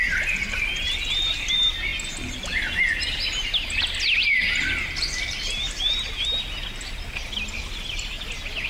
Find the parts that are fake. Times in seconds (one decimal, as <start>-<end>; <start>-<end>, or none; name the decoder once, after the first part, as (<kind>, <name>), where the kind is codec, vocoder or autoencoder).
none